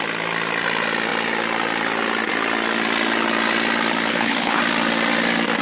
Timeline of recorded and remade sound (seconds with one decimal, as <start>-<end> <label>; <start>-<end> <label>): 0.0-4.1 recorded; 4.1-4.6 remade; 4.6-5.6 recorded